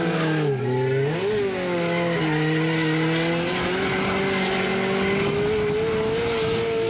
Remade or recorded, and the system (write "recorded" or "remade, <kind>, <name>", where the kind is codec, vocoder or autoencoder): recorded